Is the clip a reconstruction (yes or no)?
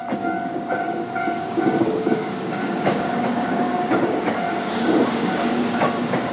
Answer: yes